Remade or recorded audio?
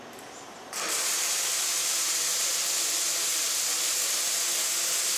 recorded